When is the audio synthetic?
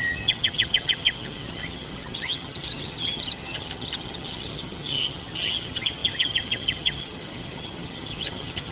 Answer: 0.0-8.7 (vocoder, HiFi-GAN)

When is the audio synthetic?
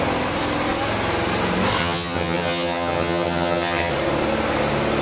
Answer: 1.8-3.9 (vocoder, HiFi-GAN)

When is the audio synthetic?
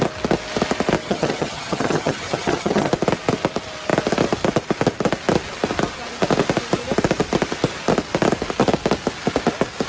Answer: 1.0-2.9 (vocoder, HiFi-GAN)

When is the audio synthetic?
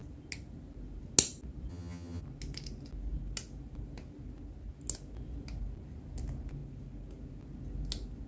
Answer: 1.7-2.2 (vocoder, HiFi-GAN)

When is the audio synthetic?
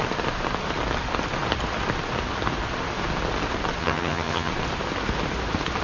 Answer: 3.8-4.5 (vocoder, HiFi-GAN)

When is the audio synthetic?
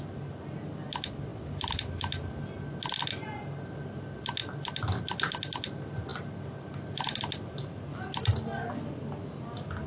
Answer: none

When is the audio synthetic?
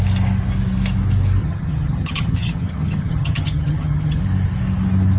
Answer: 1.4-4.2 (vocoder, HiFi-GAN)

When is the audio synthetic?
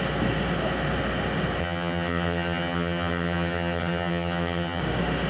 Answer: 1.6-4.8 (vocoder, HiFi-GAN)